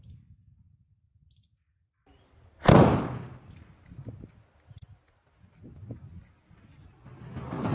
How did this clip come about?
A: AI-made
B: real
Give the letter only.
B